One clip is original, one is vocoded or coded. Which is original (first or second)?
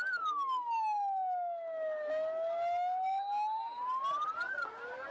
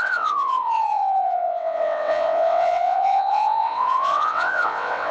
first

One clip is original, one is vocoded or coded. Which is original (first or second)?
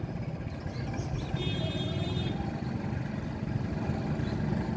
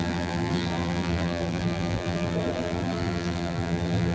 first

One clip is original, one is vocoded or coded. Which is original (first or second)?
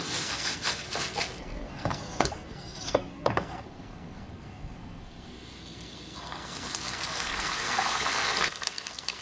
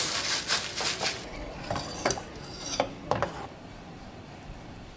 second